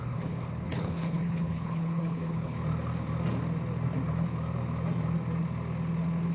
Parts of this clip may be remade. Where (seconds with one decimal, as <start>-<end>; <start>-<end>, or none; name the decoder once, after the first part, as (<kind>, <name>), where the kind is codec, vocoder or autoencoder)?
0.0-2.6 (codec, HILCodec)